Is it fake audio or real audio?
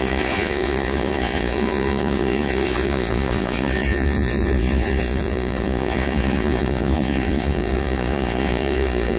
fake